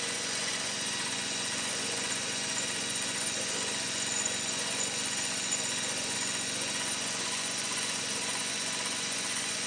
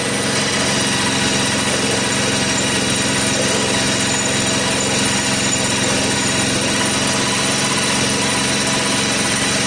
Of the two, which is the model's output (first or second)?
first